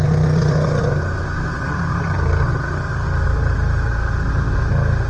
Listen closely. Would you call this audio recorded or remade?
recorded